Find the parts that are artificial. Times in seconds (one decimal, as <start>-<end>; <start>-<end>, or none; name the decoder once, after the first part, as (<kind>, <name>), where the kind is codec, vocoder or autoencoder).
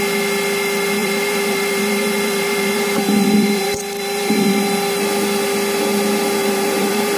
1.0-4.6 (vocoder, BigVGAN v2); 6.4-7.2